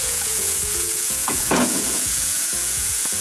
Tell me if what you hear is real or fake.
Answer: fake